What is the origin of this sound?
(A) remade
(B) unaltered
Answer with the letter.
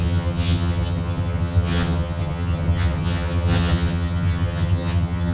A